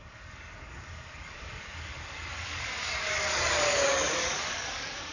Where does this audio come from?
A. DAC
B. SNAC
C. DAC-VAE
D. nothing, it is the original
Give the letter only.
A